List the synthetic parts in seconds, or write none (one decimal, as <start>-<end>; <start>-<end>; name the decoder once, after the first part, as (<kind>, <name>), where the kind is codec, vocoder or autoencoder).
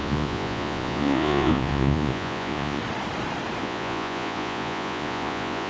0.0-2.8 (vocoder, Vocos); 3.6-5.7